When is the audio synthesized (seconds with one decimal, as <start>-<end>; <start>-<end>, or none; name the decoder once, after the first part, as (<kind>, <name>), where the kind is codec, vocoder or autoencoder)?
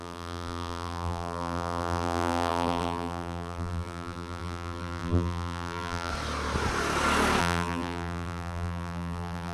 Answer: 0.0-6.1 (vocoder, BigVGAN v2); 7.4-9.5